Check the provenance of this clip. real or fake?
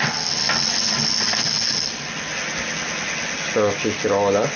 real